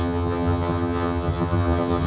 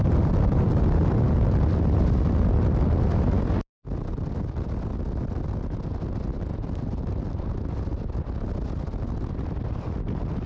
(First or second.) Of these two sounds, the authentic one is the second